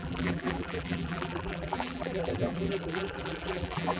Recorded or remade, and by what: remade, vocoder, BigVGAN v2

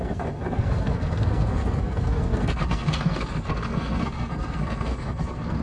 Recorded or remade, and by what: remade, codec, SNAC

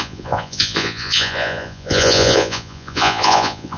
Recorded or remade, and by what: remade, vocoder, Vocos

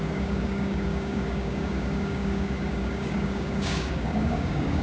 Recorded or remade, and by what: remade, codec, DAC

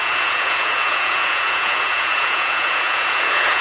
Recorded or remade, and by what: remade, vocoder, Vocos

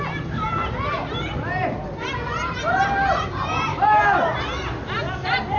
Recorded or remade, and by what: recorded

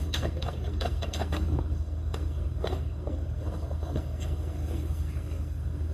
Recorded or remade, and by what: remade, codec, SNAC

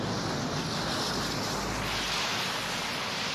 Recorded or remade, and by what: recorded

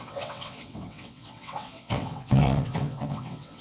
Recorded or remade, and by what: remade, vocoder, WaveNeXt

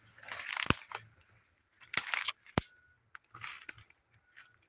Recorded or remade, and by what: recorded